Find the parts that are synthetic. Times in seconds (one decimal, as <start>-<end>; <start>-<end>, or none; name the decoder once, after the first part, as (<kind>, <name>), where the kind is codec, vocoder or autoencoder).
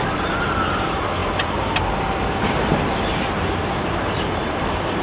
0.0-5.0 (vocoder, BigVGAN v2)